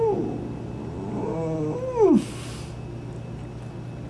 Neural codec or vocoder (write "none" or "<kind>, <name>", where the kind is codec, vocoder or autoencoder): none